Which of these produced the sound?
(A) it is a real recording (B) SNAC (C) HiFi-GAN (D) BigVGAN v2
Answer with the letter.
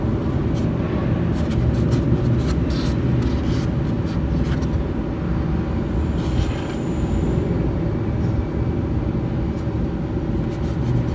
A